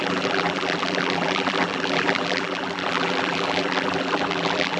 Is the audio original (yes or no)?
no